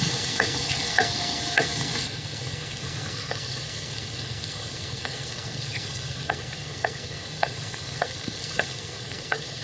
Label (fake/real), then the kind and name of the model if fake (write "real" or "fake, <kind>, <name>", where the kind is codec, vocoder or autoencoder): fake, codec, SNAC